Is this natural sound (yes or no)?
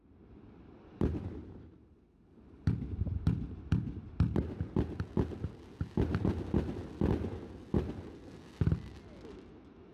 yes